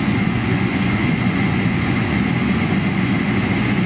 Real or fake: fake